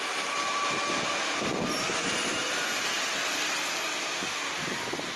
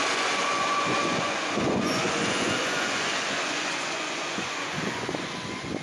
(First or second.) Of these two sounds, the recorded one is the first